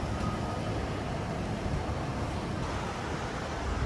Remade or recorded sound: recorded